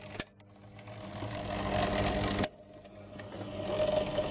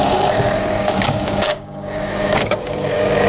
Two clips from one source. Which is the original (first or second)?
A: first